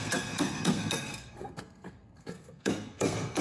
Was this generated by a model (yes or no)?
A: yes